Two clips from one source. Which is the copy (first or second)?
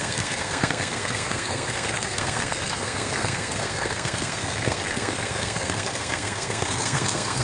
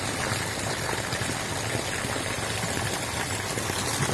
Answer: first